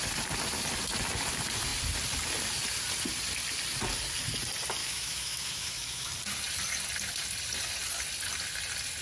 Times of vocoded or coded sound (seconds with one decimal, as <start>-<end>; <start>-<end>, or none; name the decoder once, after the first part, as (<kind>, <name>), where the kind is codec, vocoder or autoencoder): 4.8-6.1 (autoencoder, DAC-VAE)